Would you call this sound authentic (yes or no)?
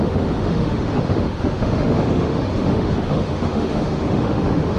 no